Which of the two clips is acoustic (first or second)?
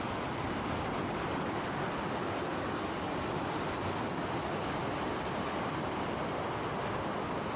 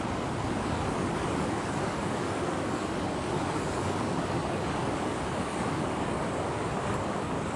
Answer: first